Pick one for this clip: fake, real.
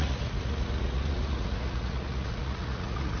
fake